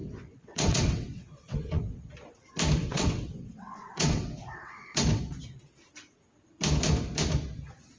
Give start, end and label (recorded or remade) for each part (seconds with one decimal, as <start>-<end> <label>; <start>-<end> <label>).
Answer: 0.0-2.1 remade; 2.1-2.8 recorded; 2.8-5.2 remade; 5.2-8.0 recorded